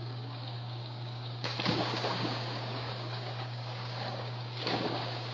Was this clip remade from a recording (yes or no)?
yes